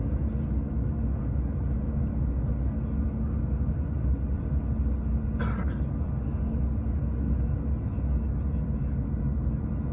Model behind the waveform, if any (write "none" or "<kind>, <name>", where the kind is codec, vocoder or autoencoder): none